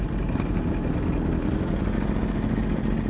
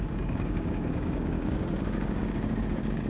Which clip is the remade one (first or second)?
second